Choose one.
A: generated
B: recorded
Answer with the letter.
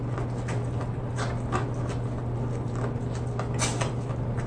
B